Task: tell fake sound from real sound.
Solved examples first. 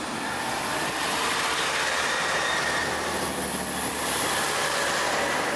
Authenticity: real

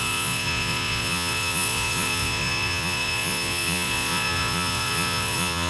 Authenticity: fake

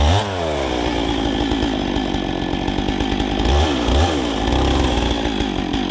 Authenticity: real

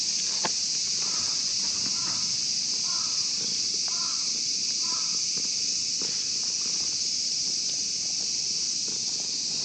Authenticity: real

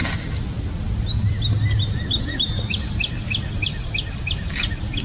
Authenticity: real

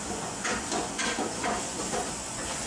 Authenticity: fake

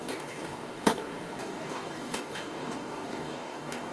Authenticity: fake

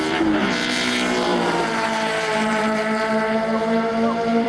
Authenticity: fake